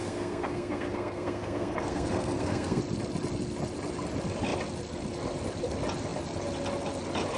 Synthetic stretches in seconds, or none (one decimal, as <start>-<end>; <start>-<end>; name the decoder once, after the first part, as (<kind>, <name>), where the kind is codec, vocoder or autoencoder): 0.0-2.8 (codec, SNAC)